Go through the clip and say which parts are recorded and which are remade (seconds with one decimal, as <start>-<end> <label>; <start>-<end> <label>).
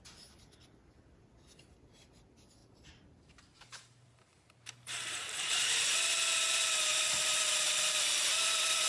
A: 0.0-2.6 recorded; 2.6-5.7 remade; 5.7-8.9 recorded